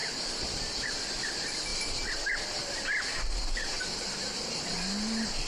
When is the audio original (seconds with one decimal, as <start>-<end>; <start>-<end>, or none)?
1.2-5.5